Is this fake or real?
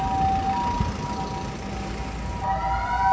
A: real